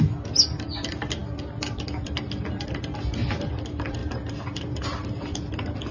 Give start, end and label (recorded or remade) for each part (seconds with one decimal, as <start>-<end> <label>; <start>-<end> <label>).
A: 0.0-4.0 recorded; 4.0-4.6 remade; 4.6-5.9 recorded